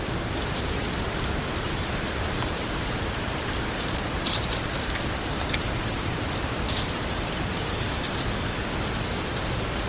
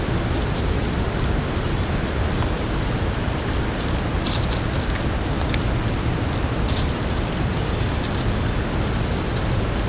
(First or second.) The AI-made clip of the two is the first